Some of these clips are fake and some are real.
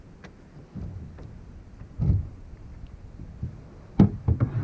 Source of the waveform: real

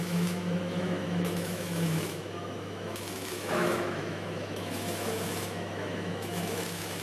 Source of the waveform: fake